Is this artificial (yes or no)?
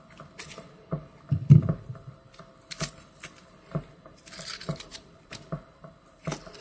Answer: no